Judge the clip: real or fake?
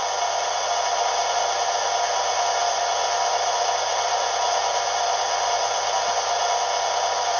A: real